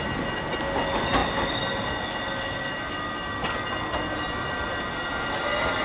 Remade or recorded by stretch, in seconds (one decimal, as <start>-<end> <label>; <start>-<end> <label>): 0.0-5.8 recorded